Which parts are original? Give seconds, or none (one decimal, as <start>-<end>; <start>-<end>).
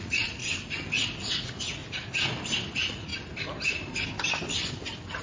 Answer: 0.4-1.4; 1.8-2.7; 3.1-5.2